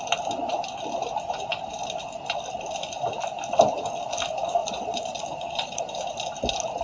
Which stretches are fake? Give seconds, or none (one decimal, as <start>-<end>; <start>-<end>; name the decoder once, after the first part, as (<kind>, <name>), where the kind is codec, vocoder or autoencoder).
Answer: 4.6-5.8 (vocoder, Vocos)